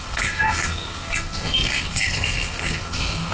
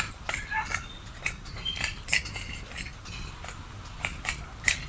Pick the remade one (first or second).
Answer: first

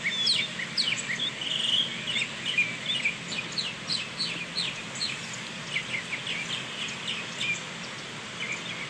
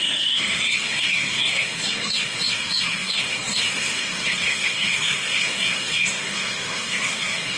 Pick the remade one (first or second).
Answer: second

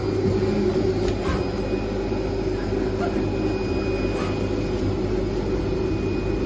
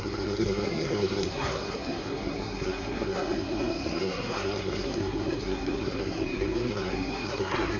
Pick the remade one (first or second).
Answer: second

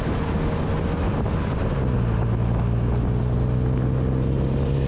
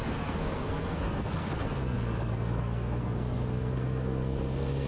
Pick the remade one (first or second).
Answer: second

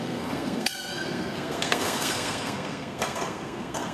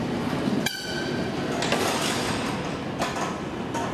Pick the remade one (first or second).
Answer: first